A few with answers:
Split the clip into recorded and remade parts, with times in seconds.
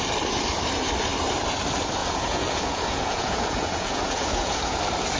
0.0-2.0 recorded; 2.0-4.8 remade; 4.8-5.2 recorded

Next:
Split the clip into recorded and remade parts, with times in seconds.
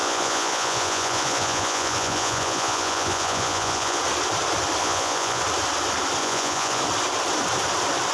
0.0-4.0 remade; 4.0-4.8 recorded; 4.8-5.4 remade; 5.4-6.2 recorded; 6.2-6.8 remade; 6.8-8.1 recorded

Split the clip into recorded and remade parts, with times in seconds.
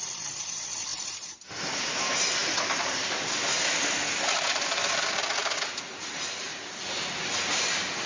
0.0-8.1 recorded